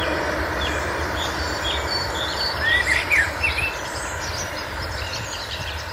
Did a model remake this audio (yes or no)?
yes